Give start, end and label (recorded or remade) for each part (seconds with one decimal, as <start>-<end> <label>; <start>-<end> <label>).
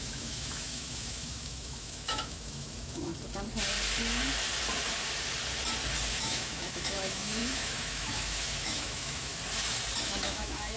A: 0.0-3.1 remade; 3.1-6.1 recorded; 6.1-9.3 remade; 9.3-10.0 recorded; 10.0-10.8 remade